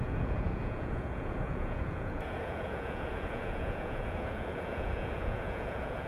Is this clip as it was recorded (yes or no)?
no